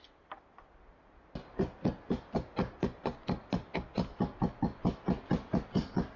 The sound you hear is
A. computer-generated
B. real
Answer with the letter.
B